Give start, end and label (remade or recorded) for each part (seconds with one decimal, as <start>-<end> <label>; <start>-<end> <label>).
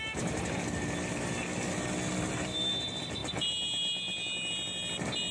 0.0-5.3 recorded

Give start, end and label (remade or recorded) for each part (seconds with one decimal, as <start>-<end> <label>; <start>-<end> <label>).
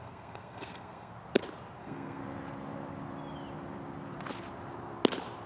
0.0-1.1 remade; 1.1-1.8 recorded; 1.8-2.2 remade; 2.2-5.5 recorded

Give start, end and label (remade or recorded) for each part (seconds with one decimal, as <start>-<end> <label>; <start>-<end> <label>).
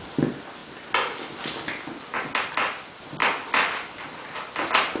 0.0-5.0 recorded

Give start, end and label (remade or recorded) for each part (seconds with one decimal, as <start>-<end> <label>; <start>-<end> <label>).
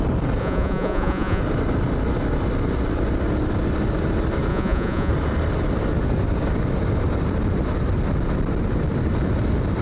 0.0-0.4 recorded; 0.4-1.4 remade; 1.4-4.5 recorded; 4.5-5.1 remade; 5.1-9.8 recorded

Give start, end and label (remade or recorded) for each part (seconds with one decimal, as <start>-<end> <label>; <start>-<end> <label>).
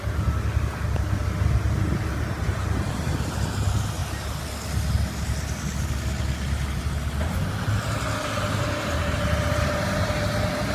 0.0-10.7 recorded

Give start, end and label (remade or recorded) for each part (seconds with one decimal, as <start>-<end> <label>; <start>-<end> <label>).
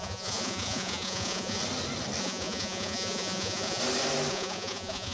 0.0-1.6 remade; 1.6-2.2 recorded; 2.2-3.8 remade; 3.8-4.3 recorded; 4.3-5.1 remade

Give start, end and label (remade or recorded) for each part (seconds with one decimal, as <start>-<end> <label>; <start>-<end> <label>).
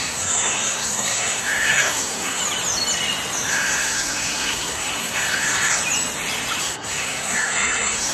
0.0-2.4 remade; 2.4-3.5 recorded; 3.5-5.8 remade; 5.8-6.6 recorded; 6.6-8.1 remade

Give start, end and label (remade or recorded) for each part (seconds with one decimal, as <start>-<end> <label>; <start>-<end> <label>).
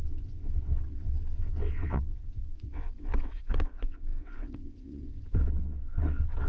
0.0-6.5 remade